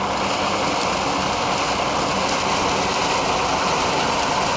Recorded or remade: recorded